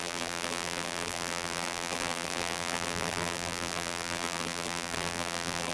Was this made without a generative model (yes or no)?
no